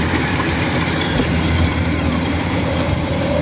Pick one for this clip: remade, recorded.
remade